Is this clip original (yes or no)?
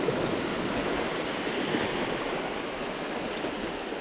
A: yes